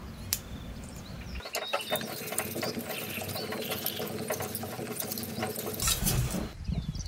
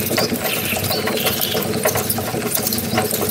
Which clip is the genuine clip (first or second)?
first